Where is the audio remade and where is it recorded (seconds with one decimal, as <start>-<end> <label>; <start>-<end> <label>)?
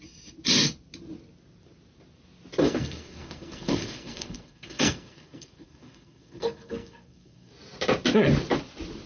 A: 0.0-2.6 recorded; 2.6-7.5 remade; 7.5-9.1 recorded